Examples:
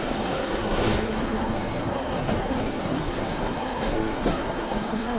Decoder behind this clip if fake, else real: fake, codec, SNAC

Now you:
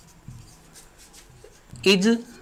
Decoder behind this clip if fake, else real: real